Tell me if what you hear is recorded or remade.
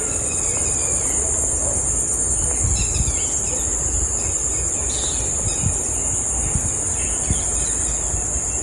recorded